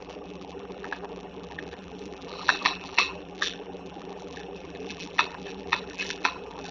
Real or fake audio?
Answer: fake